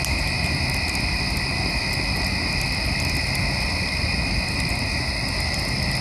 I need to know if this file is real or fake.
real